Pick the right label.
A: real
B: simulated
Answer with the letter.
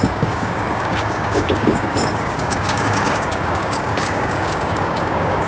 B